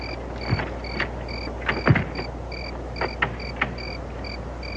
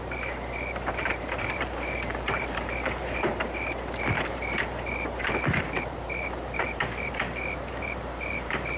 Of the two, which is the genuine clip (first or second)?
first